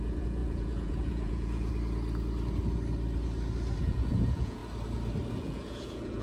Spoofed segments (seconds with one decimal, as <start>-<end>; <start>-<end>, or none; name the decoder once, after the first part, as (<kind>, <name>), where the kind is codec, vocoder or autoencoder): 0.0-1.7 (vocoder, Vocos); 3.8-4.6; 5.3-6.2